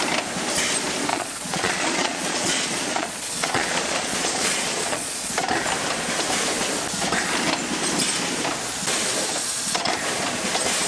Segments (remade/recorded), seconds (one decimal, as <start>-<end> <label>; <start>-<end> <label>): 0.0-1.1 recorded; 1.1-5.3 remade; 5.3-9.3 recorded; 9.3-9.9 remade; 9.9-10.9 recorded